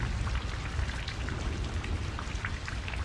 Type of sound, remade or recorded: recorded